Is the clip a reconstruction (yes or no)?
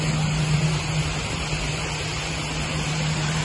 no